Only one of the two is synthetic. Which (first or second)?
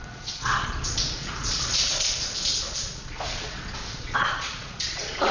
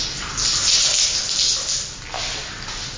first